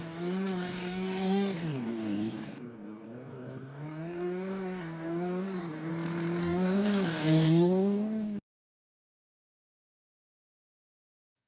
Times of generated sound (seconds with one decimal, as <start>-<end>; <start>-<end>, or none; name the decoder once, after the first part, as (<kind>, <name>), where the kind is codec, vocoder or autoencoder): 0.0-5.9 (codec, DAC); 6.4-11.5

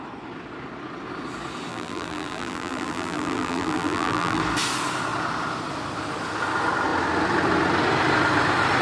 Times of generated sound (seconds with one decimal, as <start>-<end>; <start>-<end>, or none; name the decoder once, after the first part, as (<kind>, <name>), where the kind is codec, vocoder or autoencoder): 1.7-4.4 (vocoder, BigVGAN v2)

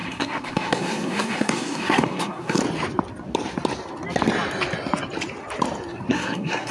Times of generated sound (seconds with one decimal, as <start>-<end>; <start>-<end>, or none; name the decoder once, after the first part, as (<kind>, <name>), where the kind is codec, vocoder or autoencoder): 0.0-2.6 (codec, SNAC); 6.1-6.7

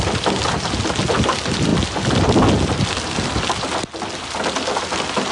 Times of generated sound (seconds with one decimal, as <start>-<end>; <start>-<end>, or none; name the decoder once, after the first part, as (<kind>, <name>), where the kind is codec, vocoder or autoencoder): none

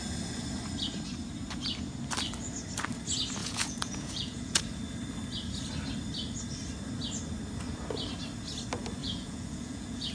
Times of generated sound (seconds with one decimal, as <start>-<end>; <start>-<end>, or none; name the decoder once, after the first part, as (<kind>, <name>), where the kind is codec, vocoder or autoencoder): 3.4-4.6 (vocoder, Vocos); 9.0-10.1

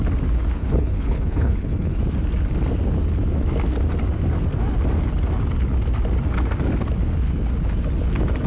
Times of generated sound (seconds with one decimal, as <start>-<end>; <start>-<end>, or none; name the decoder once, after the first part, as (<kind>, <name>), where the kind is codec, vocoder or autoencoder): 0.6-2.0 (codec, HILCodec)

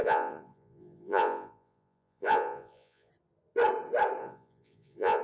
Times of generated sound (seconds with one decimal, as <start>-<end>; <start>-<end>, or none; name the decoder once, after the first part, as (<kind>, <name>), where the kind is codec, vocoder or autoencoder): 0.0-3.1 (vocoder, Vocos); 4.2-5.2